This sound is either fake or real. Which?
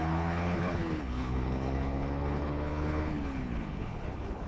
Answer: fake